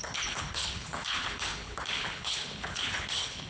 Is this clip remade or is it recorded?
remade